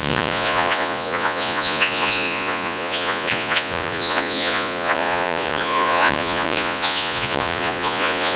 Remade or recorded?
remade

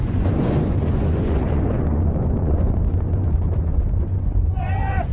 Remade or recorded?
remade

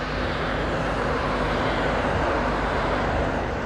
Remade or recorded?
remade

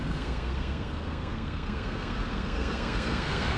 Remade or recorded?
remade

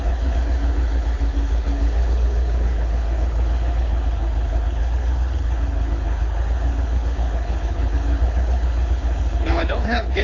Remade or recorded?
remade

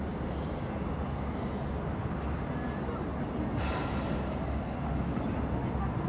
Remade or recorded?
recorded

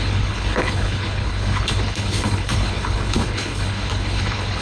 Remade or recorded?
remade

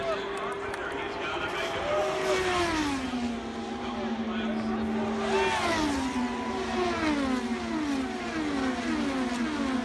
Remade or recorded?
recorded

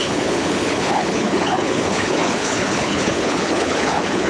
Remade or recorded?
remade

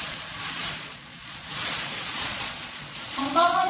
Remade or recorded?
remade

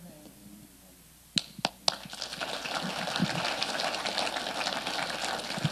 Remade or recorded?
recorded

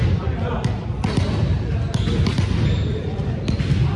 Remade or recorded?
recorded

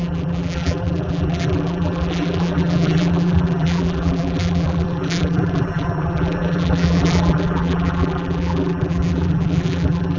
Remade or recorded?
remade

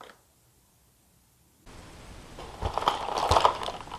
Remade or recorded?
recorded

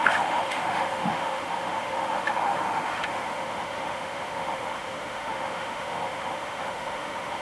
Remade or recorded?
remade